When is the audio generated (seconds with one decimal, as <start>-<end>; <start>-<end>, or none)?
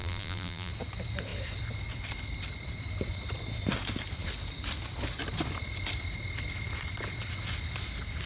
0.0-0.7